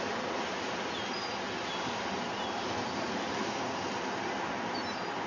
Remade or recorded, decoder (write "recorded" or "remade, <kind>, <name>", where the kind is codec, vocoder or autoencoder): recorded